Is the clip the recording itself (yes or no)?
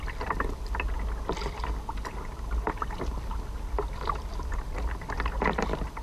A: yes